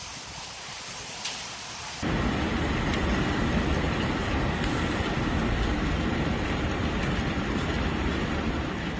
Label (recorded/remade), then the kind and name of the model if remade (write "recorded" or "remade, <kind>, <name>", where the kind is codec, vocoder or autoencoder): recorded